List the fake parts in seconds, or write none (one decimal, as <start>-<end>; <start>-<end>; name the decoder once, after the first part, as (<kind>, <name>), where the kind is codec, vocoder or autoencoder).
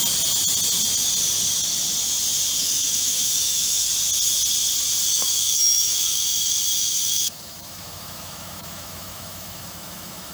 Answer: 2.6-3.9 (autoencoder, DAC-VAE); 5.1-10.3